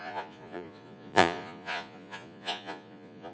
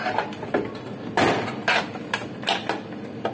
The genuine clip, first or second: second